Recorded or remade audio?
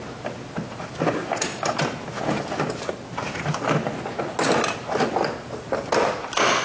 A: recorded